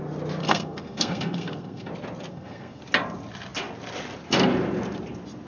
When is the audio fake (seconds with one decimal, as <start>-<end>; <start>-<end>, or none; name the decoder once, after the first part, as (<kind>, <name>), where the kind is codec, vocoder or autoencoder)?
0.4-1.9 (codec, SNAC); 2.3-2.8